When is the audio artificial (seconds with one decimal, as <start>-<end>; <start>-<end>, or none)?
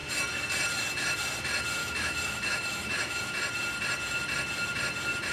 1.8-3.2